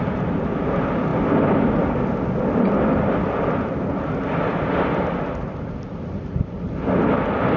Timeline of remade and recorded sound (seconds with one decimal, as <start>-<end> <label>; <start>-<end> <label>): 0.0-7.6 recorded